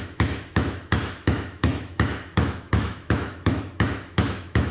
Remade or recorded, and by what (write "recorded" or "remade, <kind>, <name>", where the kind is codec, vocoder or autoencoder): remade, autoencoder, DAC-VAE